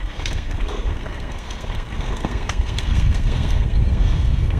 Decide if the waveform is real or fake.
fake